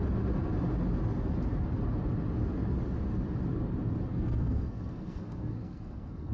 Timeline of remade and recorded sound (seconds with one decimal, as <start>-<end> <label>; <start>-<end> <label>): 0.0-4.1 recorded; 4.1-6.3 remade